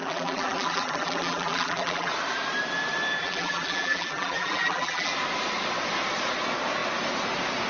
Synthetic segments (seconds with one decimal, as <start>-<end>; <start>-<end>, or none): 0.0-2.1; 3.2-5.1